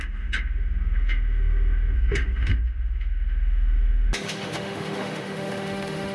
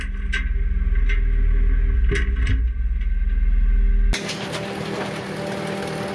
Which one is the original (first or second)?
second